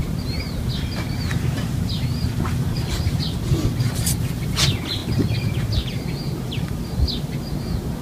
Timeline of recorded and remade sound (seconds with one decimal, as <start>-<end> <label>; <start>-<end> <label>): 0.0-3.4 remade; 3.4-8.0 recorded